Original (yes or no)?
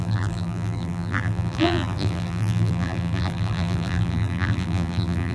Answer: no